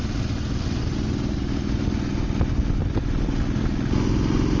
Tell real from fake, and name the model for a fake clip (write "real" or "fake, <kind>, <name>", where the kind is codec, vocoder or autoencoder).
real